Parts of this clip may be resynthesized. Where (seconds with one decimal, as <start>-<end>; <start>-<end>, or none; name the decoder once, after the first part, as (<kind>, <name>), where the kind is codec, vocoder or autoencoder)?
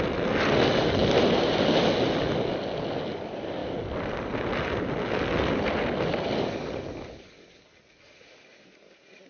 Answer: 1.0-1.6 (vocoder, BigVGAN v2)